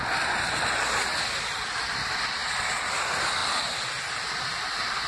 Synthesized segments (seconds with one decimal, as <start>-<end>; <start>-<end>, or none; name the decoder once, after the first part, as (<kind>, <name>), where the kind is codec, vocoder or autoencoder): none